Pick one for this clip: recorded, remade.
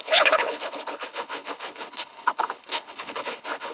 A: remade